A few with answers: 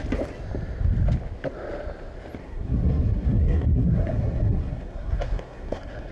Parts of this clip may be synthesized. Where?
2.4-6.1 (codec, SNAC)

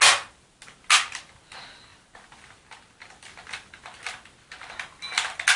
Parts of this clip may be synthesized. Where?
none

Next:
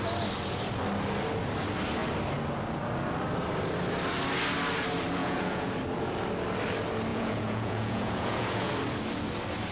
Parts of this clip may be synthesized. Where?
5.2-5.7 (vocoder, Vocos); 7.1-8.7

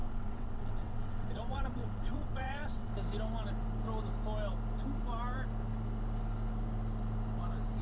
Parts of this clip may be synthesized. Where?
0.0-2.9 (vocoder, WaveNeXt)

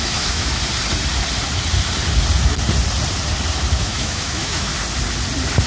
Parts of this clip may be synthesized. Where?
0.0-0.6 (autoencoder, DAC-VAE); 3.7-4.7